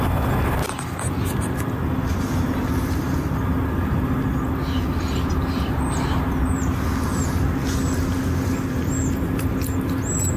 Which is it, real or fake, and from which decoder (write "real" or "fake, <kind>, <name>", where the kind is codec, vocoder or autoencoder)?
real